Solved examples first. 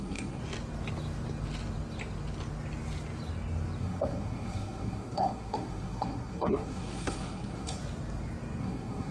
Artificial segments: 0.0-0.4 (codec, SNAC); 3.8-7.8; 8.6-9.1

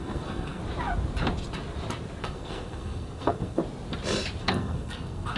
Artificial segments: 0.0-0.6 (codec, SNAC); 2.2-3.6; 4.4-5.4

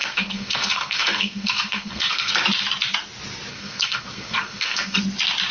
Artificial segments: 0.0-2.3 (codec, SNAC); 3.5-5.0